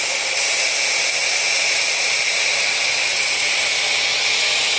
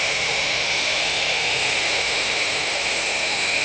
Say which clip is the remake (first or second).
second